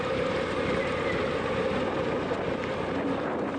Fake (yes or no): no